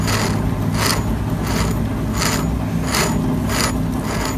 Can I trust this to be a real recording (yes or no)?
yes